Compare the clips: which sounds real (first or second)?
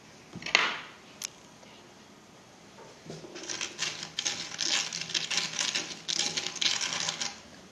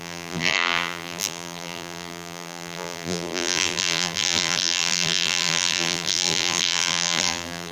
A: first